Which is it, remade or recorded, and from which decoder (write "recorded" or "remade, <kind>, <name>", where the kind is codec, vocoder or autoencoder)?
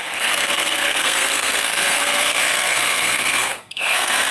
remade, codec, SNAC